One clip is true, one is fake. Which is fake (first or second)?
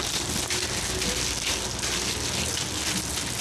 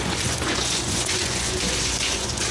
second